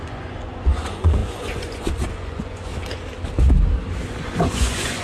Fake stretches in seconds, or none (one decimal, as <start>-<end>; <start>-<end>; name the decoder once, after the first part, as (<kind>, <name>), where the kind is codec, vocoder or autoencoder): 0.0-2.7 (vocoder, Vocos); 4.1-5.0